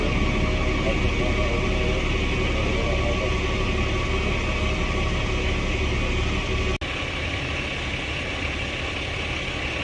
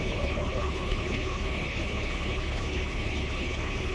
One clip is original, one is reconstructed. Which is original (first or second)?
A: first